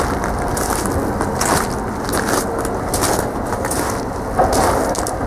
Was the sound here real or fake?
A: real